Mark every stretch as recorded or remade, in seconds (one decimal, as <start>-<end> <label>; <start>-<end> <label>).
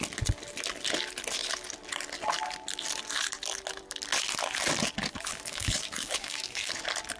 0.0-5.3 recorded; 5.3-6.7 remade; 6.7-7.2 recorded